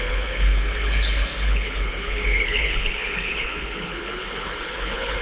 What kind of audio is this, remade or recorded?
remade